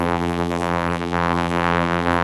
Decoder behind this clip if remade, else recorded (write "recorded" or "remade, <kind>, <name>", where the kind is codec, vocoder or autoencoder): remade, vocoder, BigVGAN v2